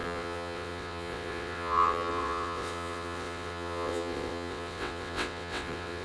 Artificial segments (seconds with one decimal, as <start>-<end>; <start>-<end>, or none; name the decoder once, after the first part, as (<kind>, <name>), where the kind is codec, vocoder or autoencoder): 0.0-6.0 (vocoder, WaveNeXt)